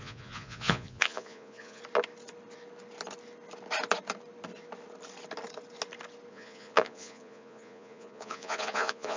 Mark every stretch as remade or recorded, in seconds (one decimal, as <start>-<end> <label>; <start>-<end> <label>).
0.0-1.8 remade; 1.8-6.3 recorded; 6.3-9.2 remade

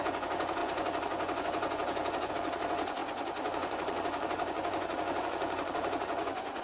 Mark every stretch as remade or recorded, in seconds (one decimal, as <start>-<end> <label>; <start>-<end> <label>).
0.0-6.6 remade

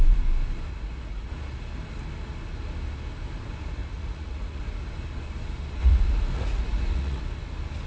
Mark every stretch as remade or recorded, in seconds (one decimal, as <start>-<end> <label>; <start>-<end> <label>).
0.0-0.7 recorded; 0.7-1.3 remade; 1.3-3.8 recorded; 3.8-4.6 remade; 4.6-5.8 recorded; 5.8-7.2 remade; 7.2-7.9 recorded